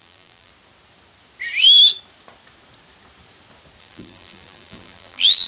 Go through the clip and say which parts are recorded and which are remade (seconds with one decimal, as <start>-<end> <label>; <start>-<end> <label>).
0.0-0.5 remade; 0.5-3.8 recorded; 3.8-5.5 remade